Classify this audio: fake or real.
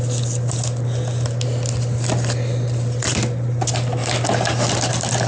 real